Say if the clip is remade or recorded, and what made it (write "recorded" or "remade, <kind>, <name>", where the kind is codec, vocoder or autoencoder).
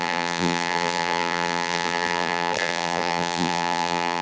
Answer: remade, vocoder, BigVGAN v2